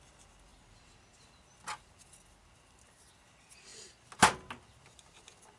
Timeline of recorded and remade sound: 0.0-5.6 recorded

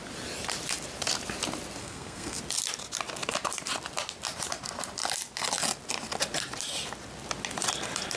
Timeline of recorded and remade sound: 0.0-1.8 recorded; 1.8-2.4 remade; 2.4-8.2 recorded

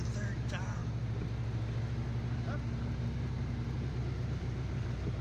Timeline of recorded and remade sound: 0.0-0.8 remade; 0.8-2.3 recorded; 2.3-5.2 remade

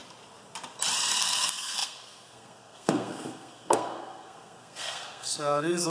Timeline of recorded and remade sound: 0.0-1.2 recorded; 1.2-5.9 remade